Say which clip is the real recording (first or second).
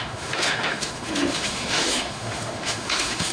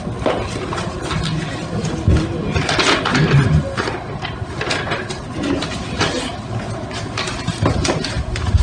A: second